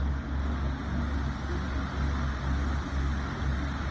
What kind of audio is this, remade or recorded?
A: recorded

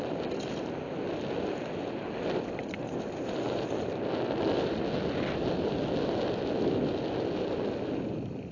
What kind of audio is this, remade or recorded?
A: recorded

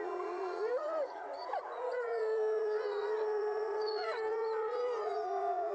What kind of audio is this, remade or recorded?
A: remade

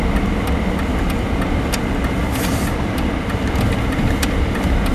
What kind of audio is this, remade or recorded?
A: recorded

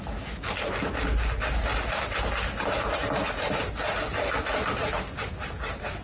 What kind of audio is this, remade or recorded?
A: recorded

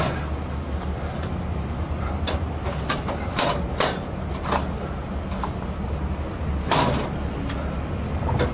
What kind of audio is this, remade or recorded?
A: recorded